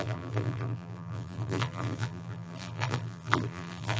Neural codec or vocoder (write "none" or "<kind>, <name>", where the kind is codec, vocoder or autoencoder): vocoder, BigVGAN v2